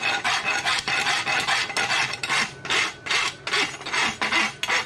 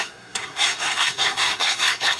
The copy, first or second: second